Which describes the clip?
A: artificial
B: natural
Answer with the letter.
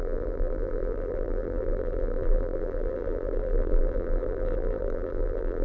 A